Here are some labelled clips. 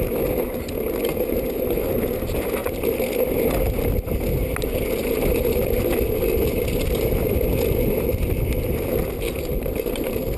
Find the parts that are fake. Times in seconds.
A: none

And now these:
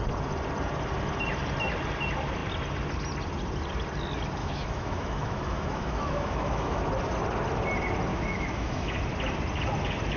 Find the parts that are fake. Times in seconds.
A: 4.4-6.8 (autoencoder, DAC-VAE); 8.1-9.0

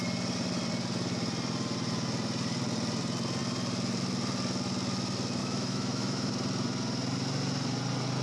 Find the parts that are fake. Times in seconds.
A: 5.4-6.3 (autoencoder, DAC-VAE)

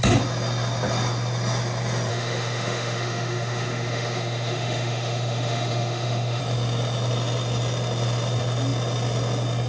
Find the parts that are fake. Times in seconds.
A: 2.1-6.4 (autoencoder, DAC-VAE)